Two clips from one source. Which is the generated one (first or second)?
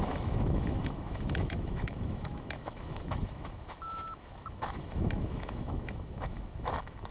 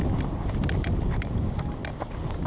first